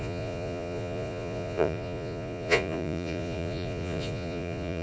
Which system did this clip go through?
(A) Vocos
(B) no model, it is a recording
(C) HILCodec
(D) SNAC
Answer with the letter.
A